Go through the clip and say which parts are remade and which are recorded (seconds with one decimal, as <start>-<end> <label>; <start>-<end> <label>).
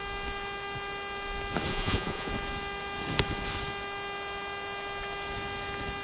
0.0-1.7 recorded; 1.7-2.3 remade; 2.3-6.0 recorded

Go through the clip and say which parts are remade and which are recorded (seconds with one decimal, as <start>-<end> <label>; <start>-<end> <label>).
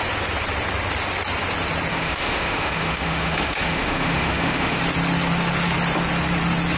0.0-1.9 recorded; 1.9-4.8 remade; 4.8-6.8 recorded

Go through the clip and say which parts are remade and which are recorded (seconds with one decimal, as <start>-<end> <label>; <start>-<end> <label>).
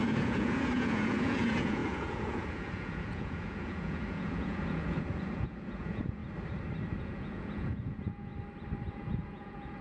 0.0-6.2 remade; 6.2-7.0 recorded; 7.0-8.3 remade; 8.3-8.9 recorded; 8.9-9.8 remade